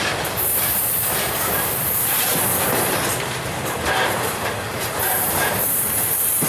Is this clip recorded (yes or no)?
no